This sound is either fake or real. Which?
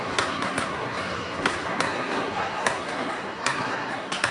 fake